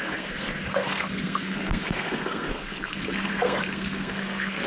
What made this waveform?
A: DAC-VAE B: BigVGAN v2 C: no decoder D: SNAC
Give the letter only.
D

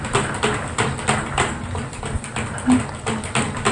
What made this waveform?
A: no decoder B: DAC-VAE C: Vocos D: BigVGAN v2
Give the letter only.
A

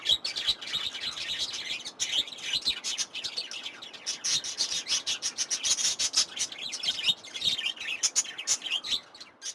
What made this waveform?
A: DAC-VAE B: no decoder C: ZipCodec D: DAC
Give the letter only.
B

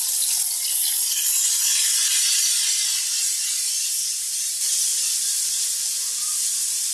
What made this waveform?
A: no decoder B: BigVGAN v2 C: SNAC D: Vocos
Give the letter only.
A